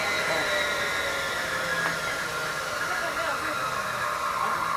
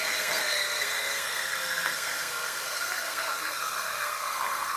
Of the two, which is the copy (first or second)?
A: second